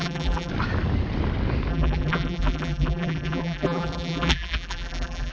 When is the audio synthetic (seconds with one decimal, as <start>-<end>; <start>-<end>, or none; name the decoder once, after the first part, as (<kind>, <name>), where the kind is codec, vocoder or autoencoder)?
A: 0.0-0.5 (vocoder, BigVGAN v2); 1.7-5.3